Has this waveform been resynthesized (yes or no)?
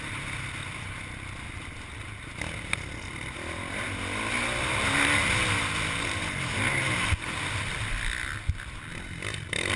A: no